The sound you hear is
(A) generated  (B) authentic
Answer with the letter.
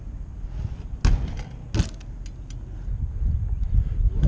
B